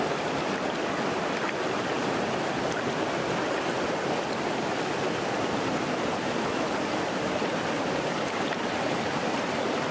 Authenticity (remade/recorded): recorded